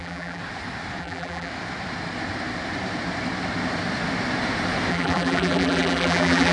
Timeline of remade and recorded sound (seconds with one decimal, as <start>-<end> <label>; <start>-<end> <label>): 0.0-0.4 remade; 0.4-1.0 recorded; 1.0-1.5 remade; 1.5-4.9 recorded; 4.9-6.5 remade